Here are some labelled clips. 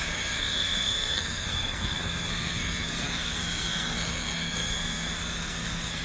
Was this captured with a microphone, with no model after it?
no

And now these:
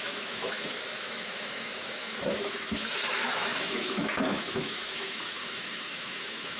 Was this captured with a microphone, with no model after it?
no